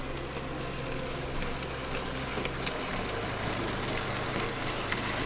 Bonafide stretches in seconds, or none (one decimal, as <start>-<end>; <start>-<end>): 0.0-5.3